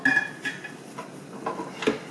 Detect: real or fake real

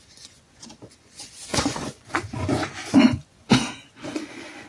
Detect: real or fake fake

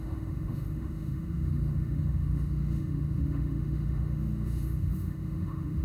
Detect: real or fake fake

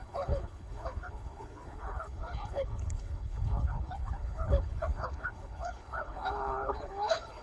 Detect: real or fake fake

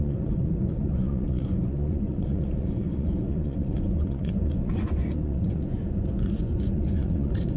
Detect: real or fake fake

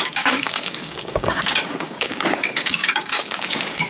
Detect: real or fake fake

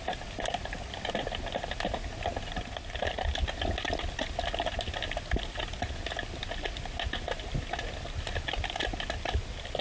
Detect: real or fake real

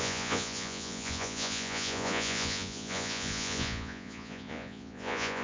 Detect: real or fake fake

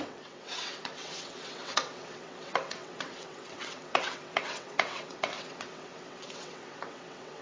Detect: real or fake fake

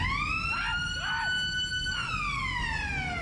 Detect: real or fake real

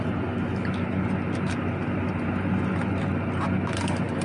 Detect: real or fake real